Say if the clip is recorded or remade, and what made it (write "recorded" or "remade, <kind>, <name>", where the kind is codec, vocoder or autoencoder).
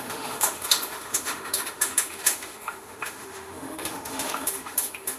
remade, autoencoder, DAC-VAE